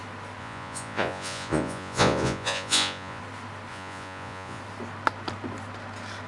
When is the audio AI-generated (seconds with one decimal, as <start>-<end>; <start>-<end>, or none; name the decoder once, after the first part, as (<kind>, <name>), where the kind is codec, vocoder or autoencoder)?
0.4-3.2 (vocoder, Vocos); 3.7-4.6